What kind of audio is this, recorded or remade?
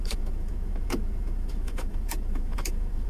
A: remade